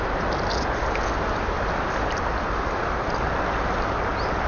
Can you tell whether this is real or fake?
real